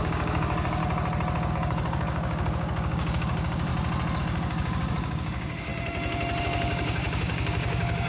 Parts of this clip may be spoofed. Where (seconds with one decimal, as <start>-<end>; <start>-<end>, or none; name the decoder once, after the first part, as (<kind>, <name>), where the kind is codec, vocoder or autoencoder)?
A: 0.0-0.8 (codec, DAC); 1.5-3.7; 4.2-5.7; 6.4-8.1